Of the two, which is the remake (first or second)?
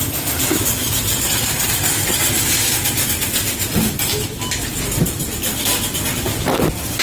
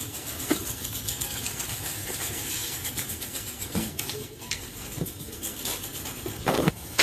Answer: second